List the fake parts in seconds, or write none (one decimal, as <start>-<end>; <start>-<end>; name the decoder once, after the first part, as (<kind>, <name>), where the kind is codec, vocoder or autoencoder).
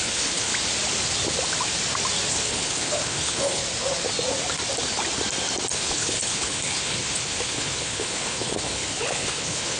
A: 0.0-0.5 (codec, HILCodec); 2.3-3.6; 5.7-9.8